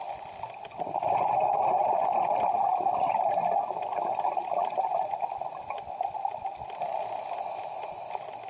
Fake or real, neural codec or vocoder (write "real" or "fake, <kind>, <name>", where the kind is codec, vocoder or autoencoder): real